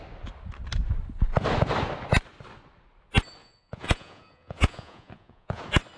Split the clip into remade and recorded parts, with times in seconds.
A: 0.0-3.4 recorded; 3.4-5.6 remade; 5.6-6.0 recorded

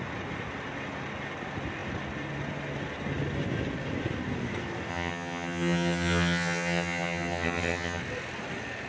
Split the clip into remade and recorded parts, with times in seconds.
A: 0.0-4.9 recorded; 4.9-8.0 remade; 8.0-8.9 recorded

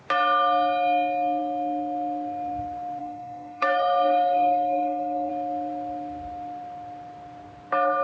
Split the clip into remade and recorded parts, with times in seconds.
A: 0.0-3.0 recorded; 3.0-5.3 remade; 5.3-8.0 recorded

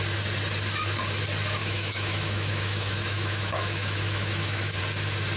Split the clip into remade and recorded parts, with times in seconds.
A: 0.0-1.6 recorded; 1.6-4.8 remade; 4.8-5.4 recorded

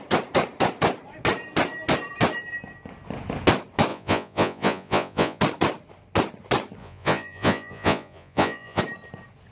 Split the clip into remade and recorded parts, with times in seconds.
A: 0.0-3.9 recorded; 3.9-5.4 remade; 5.4-6.8 recorded; 6.8-8.8 remade; 8.8-9.5 recorded

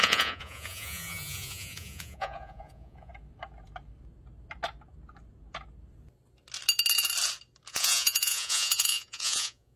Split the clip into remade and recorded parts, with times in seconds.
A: 0.0-3.1 remade; 3.1-7.7 recorded; 7.7-9.8 remade